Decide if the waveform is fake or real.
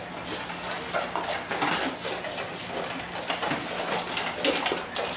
real